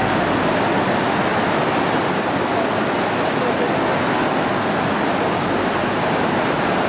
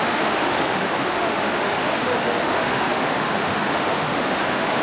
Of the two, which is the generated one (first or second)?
second